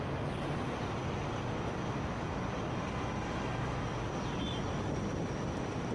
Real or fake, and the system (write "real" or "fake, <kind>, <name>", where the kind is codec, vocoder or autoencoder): fake, vocoder, BigVGAN v2